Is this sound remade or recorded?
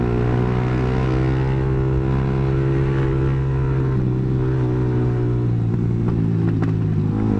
recorded